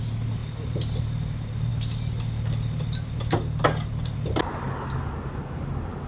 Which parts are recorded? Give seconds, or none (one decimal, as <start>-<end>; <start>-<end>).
0.0-6.1